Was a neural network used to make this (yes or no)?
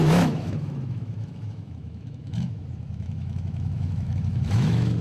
yes